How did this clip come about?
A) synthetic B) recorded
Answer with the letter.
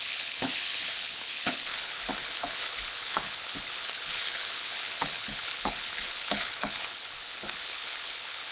A